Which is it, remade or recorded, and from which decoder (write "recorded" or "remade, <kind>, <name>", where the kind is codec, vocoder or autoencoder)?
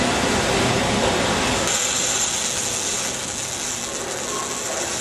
recorded